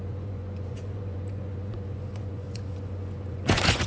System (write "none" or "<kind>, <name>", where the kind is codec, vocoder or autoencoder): vocoder, Vocos